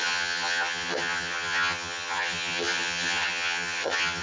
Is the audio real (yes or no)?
no